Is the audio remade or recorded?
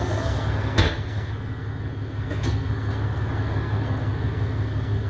remade